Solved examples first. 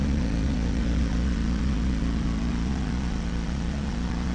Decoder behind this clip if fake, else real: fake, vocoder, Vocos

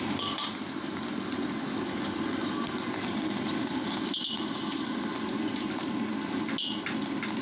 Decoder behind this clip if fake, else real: real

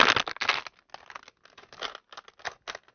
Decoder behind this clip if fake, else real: real